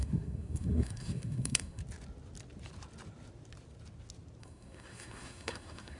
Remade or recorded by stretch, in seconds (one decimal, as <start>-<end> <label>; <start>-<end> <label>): 0.0-1.8 remade; 1.8-4.4 recorded; 4.4-6.0 remade